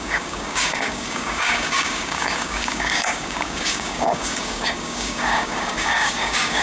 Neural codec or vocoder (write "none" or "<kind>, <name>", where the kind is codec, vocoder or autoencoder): codec, DAC